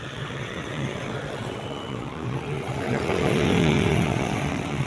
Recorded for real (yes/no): no